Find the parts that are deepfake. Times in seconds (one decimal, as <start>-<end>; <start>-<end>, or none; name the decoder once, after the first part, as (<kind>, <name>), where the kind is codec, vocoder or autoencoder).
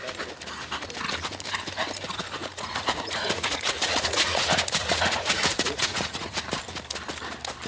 2.4-6.4 (vocoder, Vocos)